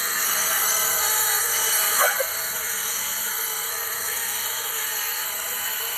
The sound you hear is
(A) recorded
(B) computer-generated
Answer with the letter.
B